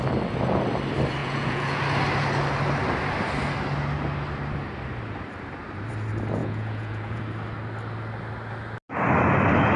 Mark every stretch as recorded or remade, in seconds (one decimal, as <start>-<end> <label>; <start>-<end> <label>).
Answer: 0.0-1.2 recorded; 1.2-1.8 remade; 1.8-6.4 recorded; 6.4-7.2 remade; 7.2-9.8 recorded